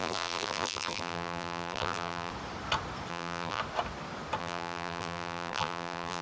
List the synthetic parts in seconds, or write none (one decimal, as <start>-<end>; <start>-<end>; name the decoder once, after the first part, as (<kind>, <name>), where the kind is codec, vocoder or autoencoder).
0.0-2.3 (vocoder, BigVGAN v2); 3.1-3.6; 4.4-6.2